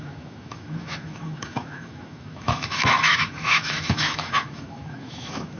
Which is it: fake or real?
fake